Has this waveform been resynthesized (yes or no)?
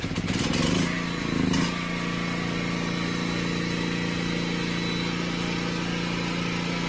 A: no